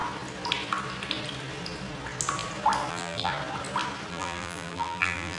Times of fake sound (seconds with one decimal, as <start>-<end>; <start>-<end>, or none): 2.9-3.3; 4.1-5.4